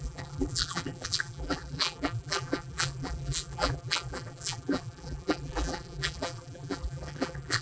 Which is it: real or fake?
fake